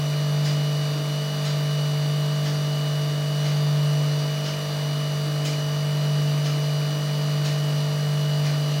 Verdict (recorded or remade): recorded